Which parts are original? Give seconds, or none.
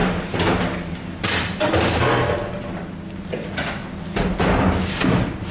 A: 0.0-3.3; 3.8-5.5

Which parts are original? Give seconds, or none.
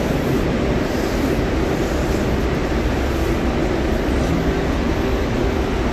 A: 0.0-5.9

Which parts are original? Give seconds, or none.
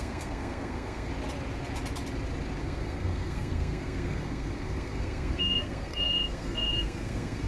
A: 1.1-2.6